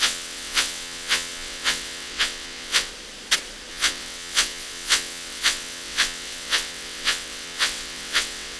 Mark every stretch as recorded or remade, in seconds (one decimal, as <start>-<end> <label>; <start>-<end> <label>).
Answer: 0.0-2.9 remade; 2.9-3.7 recorded; 3.7-8.6 remade